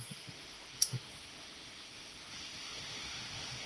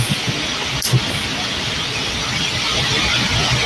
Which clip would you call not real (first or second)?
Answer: first